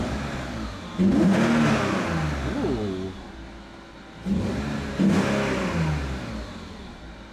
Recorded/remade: recorded